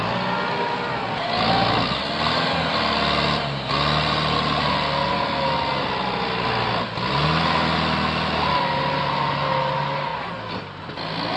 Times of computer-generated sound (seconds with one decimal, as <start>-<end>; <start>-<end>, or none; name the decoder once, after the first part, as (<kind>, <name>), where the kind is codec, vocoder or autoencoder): none